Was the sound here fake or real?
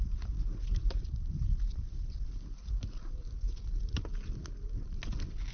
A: real